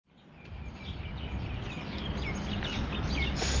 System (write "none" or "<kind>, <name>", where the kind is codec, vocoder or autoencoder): none